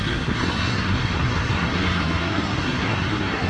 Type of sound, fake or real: fake